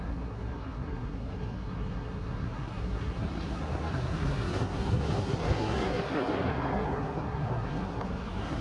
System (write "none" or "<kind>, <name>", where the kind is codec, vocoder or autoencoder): codec, SNAC